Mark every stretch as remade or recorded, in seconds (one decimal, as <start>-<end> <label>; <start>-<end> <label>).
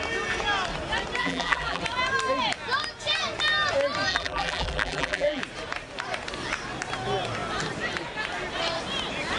0.0-1.2 recorded; 1.2-1.8 remade; 1.8-4.1 recorded; 4.1-5.4 remade; 5.4-9.4 recorded